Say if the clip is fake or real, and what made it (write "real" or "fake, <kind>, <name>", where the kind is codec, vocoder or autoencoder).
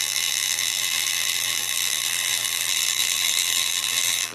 fake, vocoder, BigVGAN v2